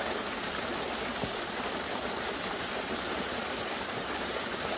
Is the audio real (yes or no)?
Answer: yes